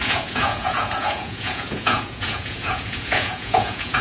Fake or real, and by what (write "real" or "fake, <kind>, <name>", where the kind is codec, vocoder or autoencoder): fake, vocoder, Vocos